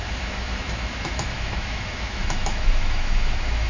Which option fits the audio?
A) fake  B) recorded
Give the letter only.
A